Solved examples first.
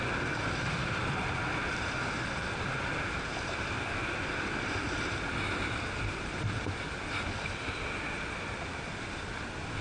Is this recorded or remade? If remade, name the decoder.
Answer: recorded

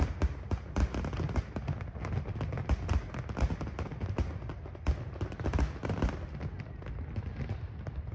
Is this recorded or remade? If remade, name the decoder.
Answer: recorded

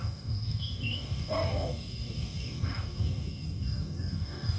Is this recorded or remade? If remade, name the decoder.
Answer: remade, codec, DAC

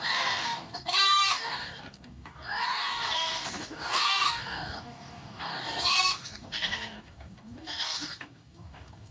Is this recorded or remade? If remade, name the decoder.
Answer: remade, codec, DAC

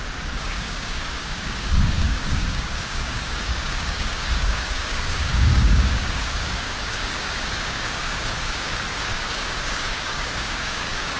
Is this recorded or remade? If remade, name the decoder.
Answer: remade, codec, DAC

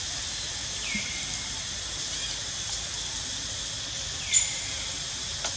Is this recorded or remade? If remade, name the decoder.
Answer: recorded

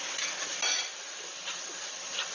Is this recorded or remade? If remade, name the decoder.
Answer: recorded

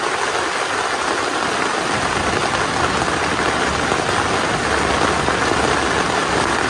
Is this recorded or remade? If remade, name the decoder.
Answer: recorded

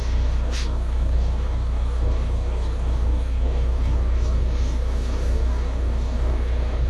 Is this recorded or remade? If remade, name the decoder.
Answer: remade, codec, DAC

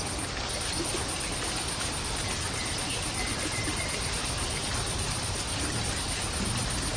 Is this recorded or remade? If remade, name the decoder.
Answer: recorded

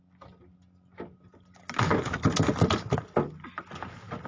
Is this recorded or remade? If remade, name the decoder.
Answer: recorded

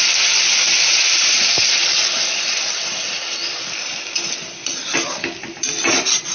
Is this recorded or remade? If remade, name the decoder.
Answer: recorded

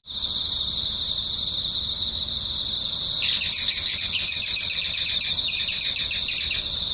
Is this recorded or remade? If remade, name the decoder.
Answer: recorded